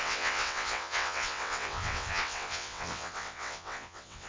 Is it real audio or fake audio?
fake